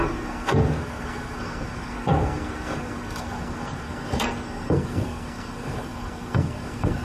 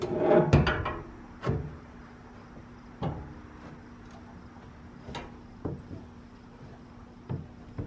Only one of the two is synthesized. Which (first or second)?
first